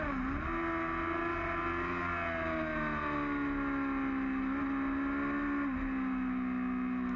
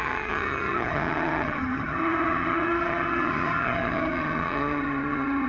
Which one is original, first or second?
first